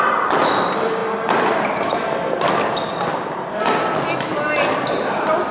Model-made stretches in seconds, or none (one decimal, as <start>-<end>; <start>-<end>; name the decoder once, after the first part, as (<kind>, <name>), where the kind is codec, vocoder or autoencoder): none